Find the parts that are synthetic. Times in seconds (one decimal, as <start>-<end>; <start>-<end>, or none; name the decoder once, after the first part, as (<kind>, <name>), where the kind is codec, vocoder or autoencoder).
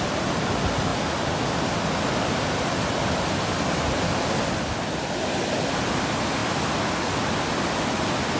none